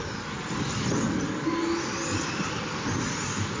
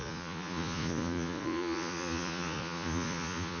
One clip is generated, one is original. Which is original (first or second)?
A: first